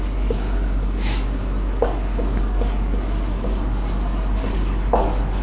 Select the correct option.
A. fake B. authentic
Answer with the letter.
A